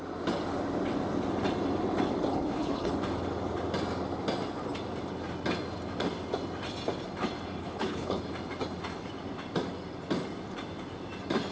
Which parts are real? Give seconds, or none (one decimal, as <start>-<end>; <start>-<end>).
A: 0.0-2.3; 2.9-7.6; 8.2-11.5